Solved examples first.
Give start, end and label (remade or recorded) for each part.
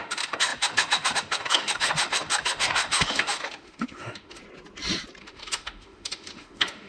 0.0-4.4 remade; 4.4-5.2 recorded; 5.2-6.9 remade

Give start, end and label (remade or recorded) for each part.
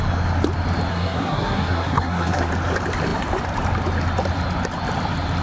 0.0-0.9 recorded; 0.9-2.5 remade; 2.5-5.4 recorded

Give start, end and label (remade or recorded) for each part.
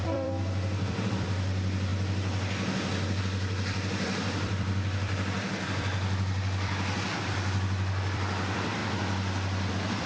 0.0-1.9 remade; 1.9-3.2 recorded; 3.2-8.8 remade; 8.8-9.7 recorded; 9.7-10.1 remade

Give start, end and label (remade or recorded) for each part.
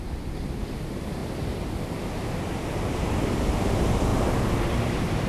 0.0-1.2 recorded; 1.2-2.4 remade; 2.4-5.3 recorded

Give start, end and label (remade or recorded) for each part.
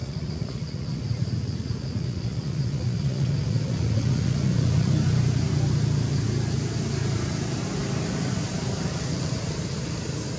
0.0-4.9 remade; 4.9-10.4 recorded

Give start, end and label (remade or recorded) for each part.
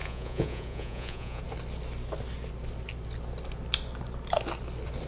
0.0-1.4 remade; 1.4-5.1 recorded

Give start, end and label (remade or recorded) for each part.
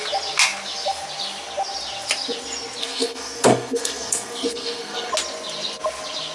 0.0-2.8 recorded; 2.8-5.1 remade; 5.1-6.3 recorded